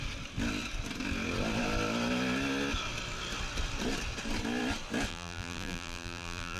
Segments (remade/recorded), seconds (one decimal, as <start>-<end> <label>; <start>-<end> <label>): 0.0-5.1 recorded; 5.1-6.6 remade